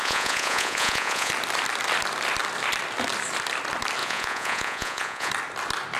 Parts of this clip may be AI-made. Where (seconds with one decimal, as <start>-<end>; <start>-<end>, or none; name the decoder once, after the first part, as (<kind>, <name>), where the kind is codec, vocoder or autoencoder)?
0.0-1.3 (vocoder, Vocos); 4.0-5.3